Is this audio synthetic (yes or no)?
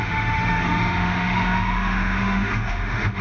yes